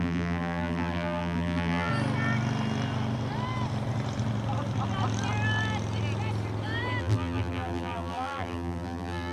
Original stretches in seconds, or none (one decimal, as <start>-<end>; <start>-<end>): 1.9-7.0